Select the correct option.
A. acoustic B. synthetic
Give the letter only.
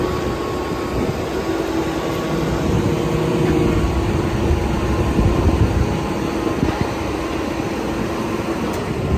A